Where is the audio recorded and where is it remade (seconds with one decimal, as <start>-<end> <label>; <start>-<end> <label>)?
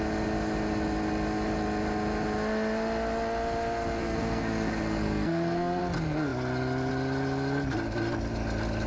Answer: 0.0-4.0 recorded; 4.0-5.8 remade; 5.8-8.9 recorded